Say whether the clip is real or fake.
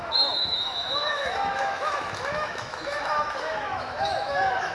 fake